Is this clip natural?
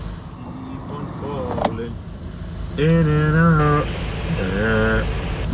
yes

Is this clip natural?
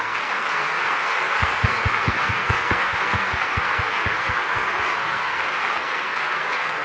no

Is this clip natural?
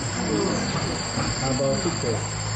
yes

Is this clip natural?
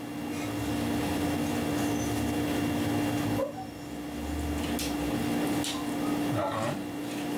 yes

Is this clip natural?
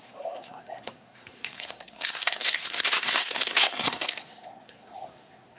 no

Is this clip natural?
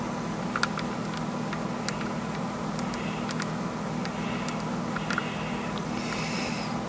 yes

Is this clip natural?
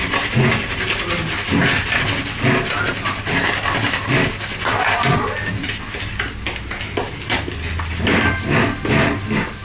yes